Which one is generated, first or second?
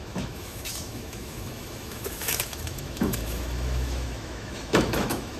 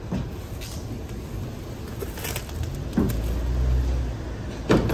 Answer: first